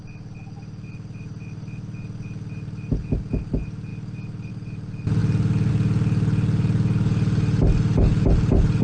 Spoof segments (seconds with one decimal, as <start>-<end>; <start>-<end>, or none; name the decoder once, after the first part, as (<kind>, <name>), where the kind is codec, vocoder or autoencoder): none